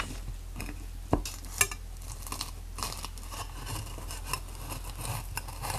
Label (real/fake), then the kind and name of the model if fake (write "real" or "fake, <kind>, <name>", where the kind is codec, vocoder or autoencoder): real